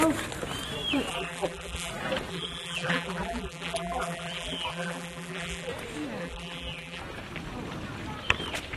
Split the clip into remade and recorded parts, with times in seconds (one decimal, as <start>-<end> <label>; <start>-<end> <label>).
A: 0.0-1.1 recorded; 1.1-1.9 remade; 1.9-2.3 recorded; 2.3-5.7 remade; 5.7-6.2 recorded; 6.2-7.0 remade; 7.0-8.8 recorded